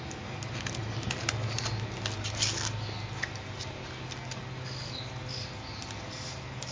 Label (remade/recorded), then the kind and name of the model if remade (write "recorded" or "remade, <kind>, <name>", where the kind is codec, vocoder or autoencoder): recorded